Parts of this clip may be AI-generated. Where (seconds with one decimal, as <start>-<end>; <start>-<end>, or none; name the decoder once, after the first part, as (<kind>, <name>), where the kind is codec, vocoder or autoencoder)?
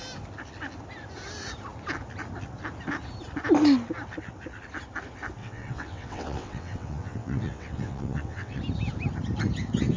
5.4-8.6 (vocoder, WaveNeXt)